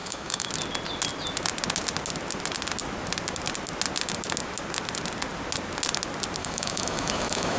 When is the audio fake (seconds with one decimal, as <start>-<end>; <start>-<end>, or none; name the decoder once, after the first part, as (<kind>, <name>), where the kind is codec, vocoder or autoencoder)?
0.0-0.5 (autoencoder, DAC-VAE); 6.4-7.6

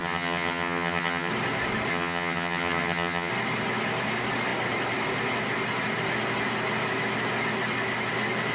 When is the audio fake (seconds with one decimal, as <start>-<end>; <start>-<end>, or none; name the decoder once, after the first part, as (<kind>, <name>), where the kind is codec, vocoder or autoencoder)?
0.0-1.3 (vocoder, HiFi-GAN); 1.9-3.3

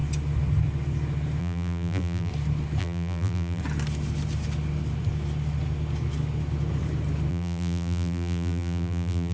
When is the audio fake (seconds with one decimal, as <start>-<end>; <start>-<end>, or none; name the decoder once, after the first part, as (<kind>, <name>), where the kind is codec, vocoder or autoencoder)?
1.4-2.3 (vocoder, BigVGAN v2); 2.8-3.6; 7.3-9.3

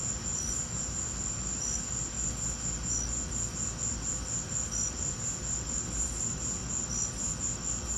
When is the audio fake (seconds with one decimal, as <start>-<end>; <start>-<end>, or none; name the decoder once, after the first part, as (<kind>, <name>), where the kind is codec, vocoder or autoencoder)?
4.8-6.6 (vocoder, BigVGAN v2); 7.4-8.0

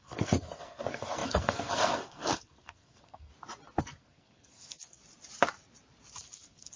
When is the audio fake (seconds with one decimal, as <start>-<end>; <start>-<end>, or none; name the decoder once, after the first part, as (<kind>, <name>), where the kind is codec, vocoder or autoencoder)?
0.0-3.3 (codec, SNAC); 3.8-5.0; 6.2-6.8

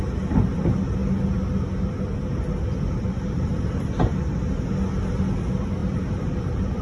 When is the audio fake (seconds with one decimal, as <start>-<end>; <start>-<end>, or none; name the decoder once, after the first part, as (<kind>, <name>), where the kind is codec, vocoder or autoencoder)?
5.8-6.8 (vocoder, BigVGAN v2)

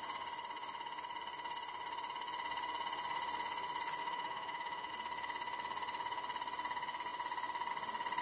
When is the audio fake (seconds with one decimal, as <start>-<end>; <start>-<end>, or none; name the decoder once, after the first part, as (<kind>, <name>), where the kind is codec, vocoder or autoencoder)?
4.0-4.9 (autoencoder, DAC-VAE)